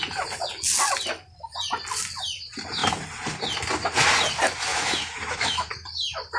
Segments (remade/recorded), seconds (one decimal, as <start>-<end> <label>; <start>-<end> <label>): 0.0-4.7 recorded; 4.7-5.7 remade; 5.7-6.4 recorded